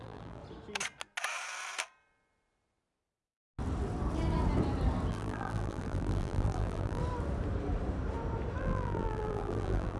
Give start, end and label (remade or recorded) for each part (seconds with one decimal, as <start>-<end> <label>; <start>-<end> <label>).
0.0-0.4 remade; 0.4-5.1 recorded; 5.1-7.0 remade; 7.0-8.6 recorded; 8.6-10.0 remade